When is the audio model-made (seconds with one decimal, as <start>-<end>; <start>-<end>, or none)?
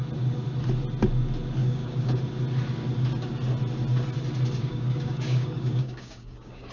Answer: 1.6-2.2; 4.6-6.7